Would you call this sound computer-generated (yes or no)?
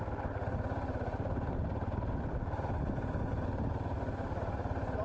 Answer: no